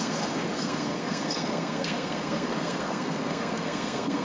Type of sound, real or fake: fake